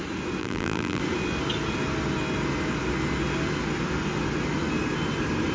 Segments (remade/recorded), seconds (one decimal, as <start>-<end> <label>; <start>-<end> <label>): 0.0-0.4 recorded; 0.4-1.0 remade; 1.0-5.5 recorded